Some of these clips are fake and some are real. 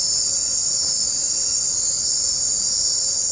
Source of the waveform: real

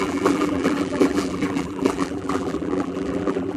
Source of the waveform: fake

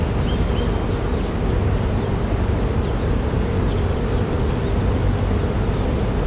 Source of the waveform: real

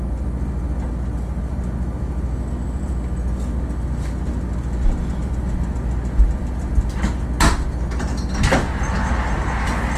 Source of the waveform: real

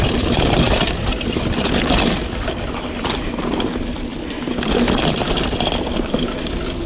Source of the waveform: fake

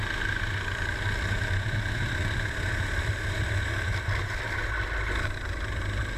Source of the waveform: real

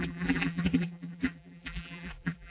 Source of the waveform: fake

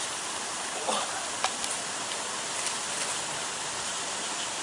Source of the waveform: real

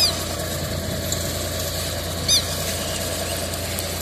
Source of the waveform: real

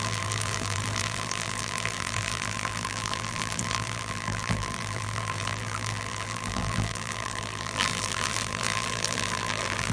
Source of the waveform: fake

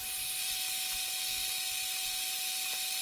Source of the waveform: real